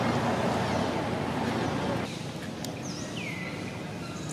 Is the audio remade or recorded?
recorded